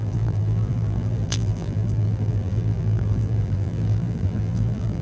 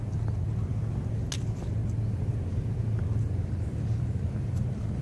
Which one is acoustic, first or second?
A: second